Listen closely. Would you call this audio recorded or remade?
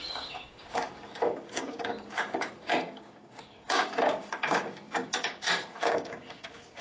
remade